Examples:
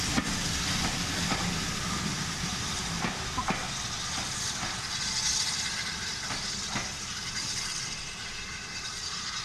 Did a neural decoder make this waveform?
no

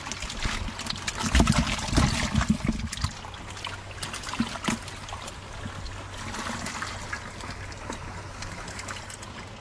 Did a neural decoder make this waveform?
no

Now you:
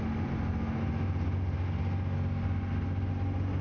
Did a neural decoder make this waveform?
no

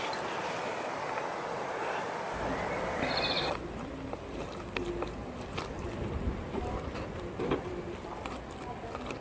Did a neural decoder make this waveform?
no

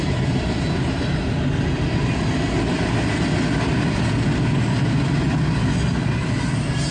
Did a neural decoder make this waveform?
no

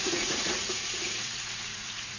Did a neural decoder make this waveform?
yes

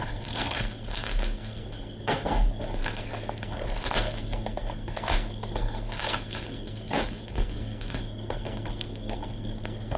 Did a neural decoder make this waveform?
yes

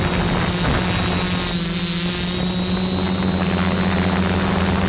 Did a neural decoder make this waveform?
no